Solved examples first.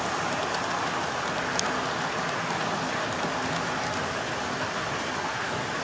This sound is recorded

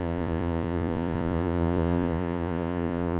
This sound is remade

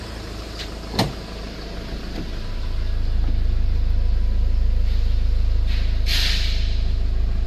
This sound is remade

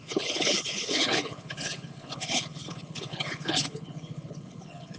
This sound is remade